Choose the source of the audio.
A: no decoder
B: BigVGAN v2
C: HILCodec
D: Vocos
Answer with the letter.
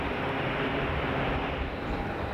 A